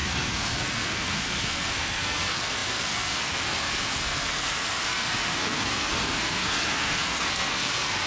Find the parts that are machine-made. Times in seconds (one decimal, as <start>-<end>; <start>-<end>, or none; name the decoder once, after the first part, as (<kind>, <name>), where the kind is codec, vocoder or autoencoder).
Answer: 0.0-8.1 (codec, SNAC)